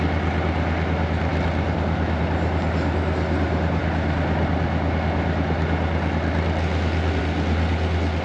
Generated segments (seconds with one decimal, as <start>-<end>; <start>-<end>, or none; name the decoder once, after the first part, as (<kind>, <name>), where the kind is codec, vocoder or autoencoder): none